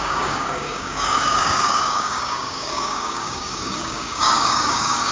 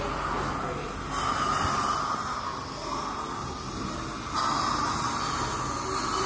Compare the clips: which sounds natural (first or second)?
second